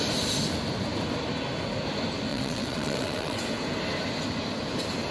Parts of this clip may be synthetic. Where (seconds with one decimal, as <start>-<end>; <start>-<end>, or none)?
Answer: 2.3-3.4